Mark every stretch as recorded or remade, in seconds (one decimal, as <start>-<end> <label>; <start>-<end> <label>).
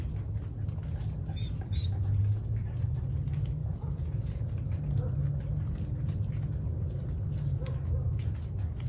0.0-3.6 recorded; 3.6-4.5 remade; 4.5-8.9 recorded